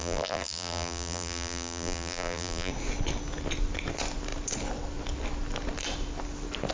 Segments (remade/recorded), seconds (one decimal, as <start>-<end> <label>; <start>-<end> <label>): 0.0-2.7 remade; 2.7-6.7 recorded